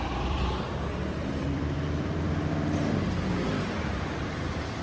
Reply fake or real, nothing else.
fake